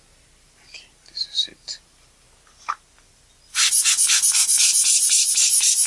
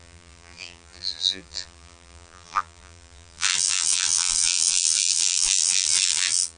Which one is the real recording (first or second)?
first